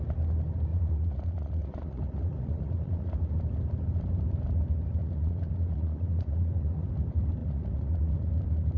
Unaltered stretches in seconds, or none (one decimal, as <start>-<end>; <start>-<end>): 0.0-0.7; 3.3-5.0; 6.9-7.4; 8.3-8.8

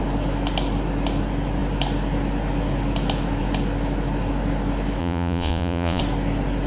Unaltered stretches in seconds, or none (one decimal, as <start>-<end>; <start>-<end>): 0.0-5.0; 6.0-6.7

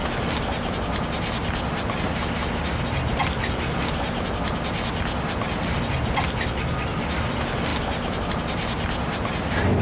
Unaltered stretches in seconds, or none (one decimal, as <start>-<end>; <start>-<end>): 0.0-9.8

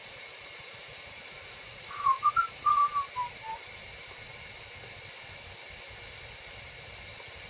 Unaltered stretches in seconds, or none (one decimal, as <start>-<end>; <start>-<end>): 2.8-7.5